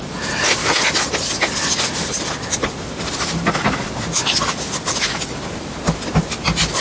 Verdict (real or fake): real